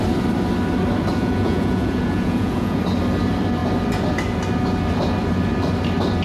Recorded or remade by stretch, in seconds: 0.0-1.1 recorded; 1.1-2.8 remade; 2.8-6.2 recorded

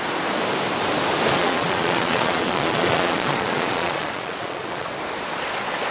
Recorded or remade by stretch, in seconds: 0.0-1.4 recorded; 1.4-4.9 remade; 4.9-5.9 recorded

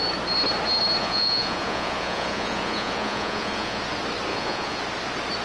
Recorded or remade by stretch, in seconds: 0.0-1.0 recorded; 1.0-3.8 remade; 3.8-4.3 recorded; 4.3-4.8 remade; 4.8-5.4 recorded